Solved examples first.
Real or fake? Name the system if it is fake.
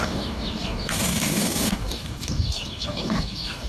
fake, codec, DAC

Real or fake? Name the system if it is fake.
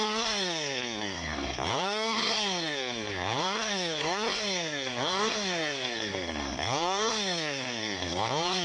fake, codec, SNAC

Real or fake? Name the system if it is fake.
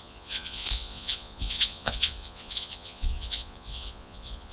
fake, vocoder, Vocos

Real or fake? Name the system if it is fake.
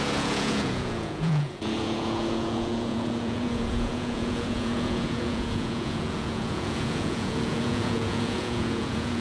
fake, vocoder, Vocos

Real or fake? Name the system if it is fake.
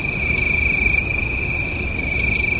real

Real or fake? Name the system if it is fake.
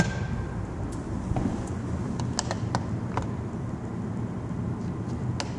real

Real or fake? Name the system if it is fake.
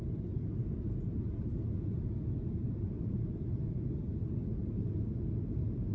real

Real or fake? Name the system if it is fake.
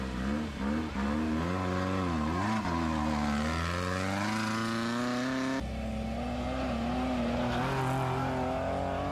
real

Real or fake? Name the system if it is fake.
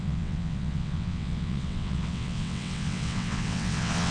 fake, vocoder, WaveNeXt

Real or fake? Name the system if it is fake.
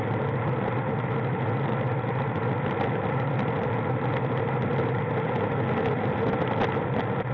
real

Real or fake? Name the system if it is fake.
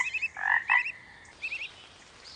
real